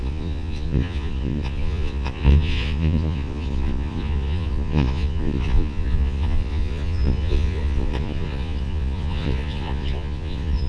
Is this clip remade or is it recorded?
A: remade